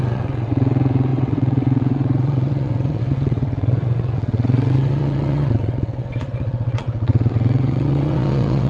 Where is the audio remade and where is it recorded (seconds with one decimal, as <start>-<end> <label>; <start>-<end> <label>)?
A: 0.0-8.7 remade